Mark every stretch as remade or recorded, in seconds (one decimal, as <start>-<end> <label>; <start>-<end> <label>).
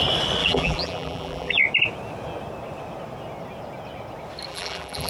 0.0-0.4 recorded; 0.4-1.6 remade; 1.6-4.5 recorded; 4.5-5.1 remade